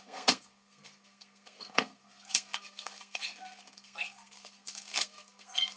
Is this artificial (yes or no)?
yes